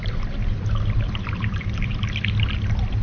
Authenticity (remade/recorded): recorded